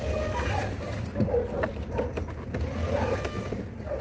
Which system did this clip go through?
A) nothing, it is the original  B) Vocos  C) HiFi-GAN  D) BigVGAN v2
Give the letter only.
A